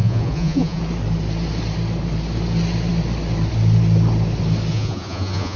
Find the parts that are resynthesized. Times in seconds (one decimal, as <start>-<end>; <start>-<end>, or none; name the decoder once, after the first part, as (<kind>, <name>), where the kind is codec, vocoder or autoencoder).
0.0-0.8 (vocoder, Vocos); 4.7-5.6